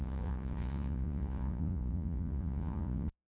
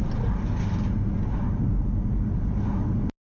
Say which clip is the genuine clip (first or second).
second